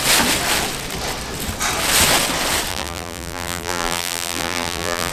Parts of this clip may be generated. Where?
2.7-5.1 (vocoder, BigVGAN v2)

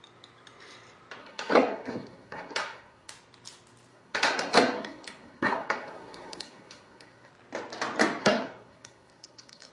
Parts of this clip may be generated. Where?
1.2-3.1 (codec, SNAC); 3.9-7.3; 8.2-9.7

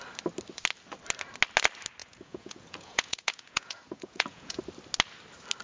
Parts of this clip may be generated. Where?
2.0-4.6 (vocoder, Vocos)

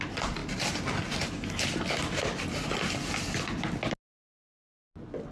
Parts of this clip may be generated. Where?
none